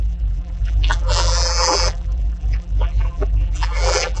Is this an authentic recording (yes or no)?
no